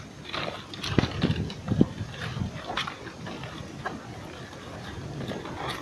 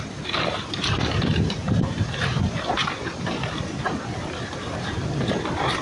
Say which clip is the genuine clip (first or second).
first